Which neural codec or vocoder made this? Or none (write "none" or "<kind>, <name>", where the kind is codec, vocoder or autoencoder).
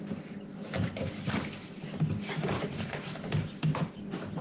none